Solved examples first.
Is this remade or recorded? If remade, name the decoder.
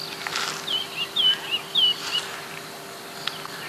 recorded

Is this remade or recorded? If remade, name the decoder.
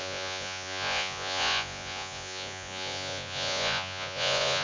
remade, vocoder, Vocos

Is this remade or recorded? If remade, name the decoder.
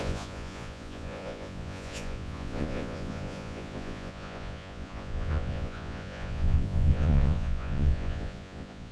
remade, vocoder, Vocos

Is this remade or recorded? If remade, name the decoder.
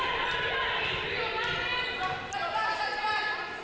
recorded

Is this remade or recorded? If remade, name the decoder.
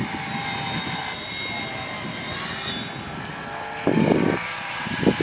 recorded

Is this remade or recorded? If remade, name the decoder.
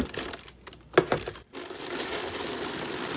recorded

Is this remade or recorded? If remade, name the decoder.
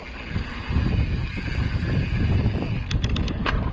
recorded